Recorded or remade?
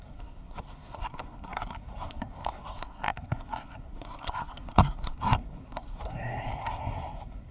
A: remade